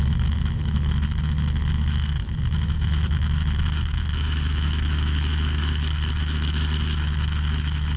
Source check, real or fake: fake